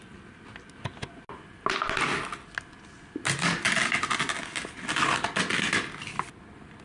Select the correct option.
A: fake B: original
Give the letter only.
B